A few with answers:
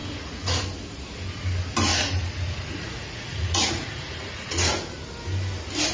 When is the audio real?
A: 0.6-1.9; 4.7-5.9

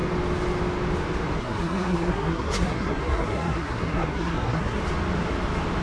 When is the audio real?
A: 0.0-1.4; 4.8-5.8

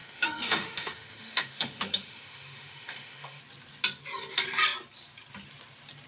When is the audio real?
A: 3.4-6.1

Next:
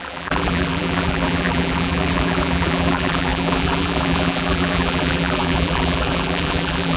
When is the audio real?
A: none

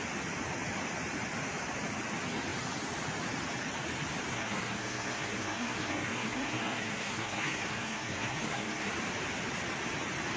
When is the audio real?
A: 0.0-4.3; 8.9-10.4